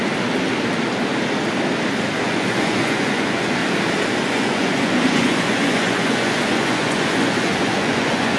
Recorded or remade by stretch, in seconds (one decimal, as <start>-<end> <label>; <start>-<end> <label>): 0.0-2.2 recorded; 2.2-3.6 remade; 3.6-4.3 recorded; 4.3-8.4 remade